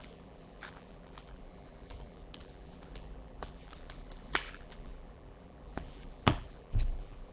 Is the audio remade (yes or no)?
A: yes